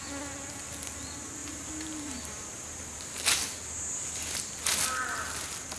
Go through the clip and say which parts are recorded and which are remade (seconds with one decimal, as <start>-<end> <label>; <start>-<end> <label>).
0.0-1.4 recorded; 1.4-3.4 remade; 3.4-5.8 recorded